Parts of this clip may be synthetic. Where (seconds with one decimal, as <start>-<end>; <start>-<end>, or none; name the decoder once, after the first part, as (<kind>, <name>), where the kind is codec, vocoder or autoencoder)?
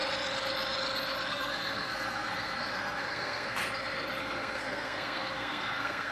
1.3-3.6 (codec, SNAC); 4.2-6.1